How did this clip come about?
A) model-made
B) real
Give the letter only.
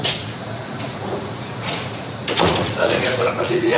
A